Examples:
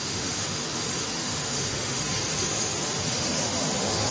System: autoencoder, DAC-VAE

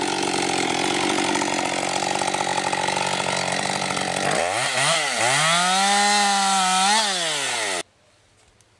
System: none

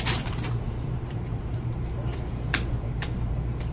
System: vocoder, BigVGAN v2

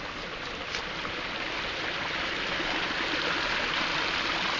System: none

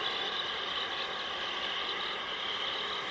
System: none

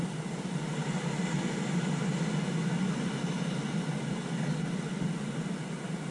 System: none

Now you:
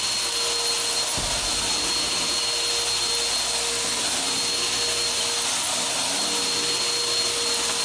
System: none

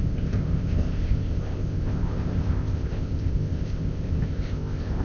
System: codec, ZipCodec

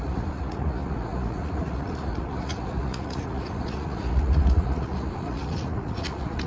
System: vocoder, Vocos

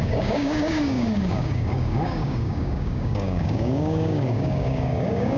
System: codec, DAC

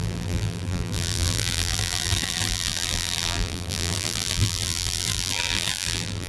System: vocoder, BigVGAN v2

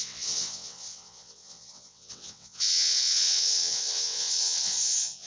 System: vocoder, WaveNeXt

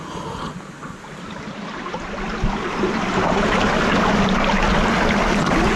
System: none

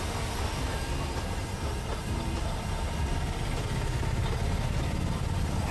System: none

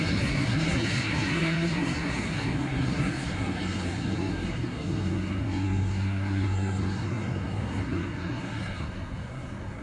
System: codec, SNAC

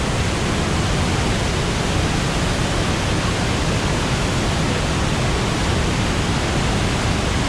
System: none